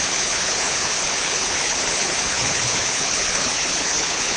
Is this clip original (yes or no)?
no